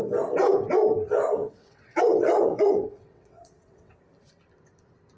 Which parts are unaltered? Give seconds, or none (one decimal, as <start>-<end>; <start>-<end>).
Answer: 0.0-1.4; 4.0-5.2

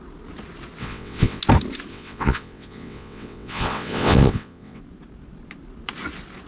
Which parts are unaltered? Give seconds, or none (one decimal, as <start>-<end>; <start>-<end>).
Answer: 0.0-0.8; 1.4-1.9; 4.8-6.5

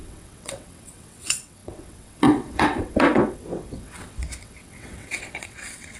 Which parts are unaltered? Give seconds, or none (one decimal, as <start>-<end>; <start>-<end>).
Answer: none

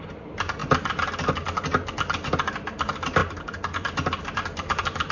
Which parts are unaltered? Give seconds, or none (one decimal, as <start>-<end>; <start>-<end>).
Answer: 0.0-5.1

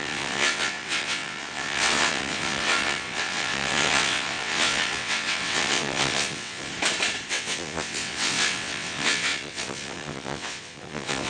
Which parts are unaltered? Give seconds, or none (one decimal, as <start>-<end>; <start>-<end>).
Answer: 6.7-7.3

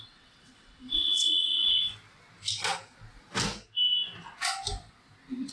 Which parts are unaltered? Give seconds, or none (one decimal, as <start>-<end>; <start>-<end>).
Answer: 1.9-5.5

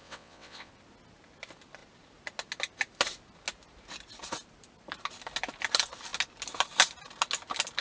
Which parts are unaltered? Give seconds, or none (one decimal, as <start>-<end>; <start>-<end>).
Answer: 0.7-7.8

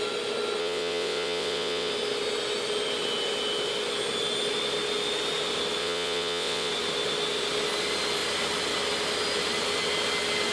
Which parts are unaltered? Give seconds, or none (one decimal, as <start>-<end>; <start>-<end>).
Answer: 0.0-0.6; 1.9-5.8; 6.7-10.5